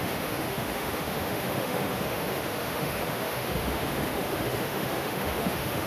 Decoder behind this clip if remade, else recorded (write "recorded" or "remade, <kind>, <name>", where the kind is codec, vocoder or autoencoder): remade, autoencoder, DAC-VAE